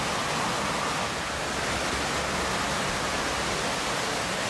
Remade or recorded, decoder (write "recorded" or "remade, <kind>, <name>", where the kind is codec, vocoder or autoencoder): recorded